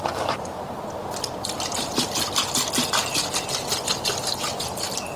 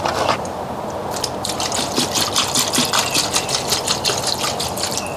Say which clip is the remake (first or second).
first